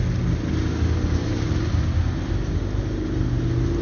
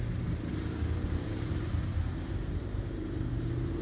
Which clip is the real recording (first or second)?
first